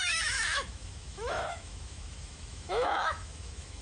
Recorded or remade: remade